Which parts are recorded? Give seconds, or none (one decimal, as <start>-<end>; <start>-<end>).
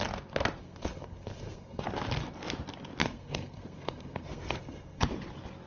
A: 0.0-0.6; 1.8-3.0; 5.0-5.7